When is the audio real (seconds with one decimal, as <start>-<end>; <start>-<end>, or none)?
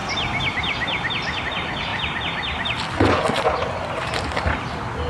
0.0-1.4; 1.9-5.1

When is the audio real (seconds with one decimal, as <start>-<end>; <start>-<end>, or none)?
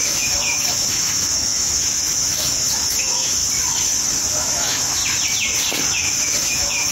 3.4-4.4; 5.0-5.9